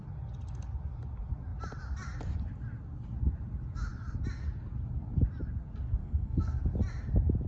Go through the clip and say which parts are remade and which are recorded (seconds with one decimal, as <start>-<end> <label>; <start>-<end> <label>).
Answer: 0.0-6.0 recorded; 6.0-6.6 remade; 6.6-7.5 recorded